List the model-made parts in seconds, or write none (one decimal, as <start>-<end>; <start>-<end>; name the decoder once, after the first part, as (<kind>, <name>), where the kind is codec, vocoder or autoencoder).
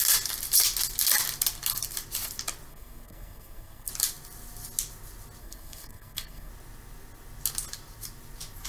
2.7-3.9 (codec, SNAC); 5.4-6.5